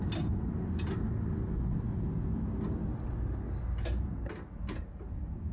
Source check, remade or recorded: recorded